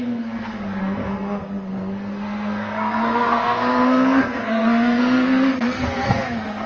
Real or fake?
fake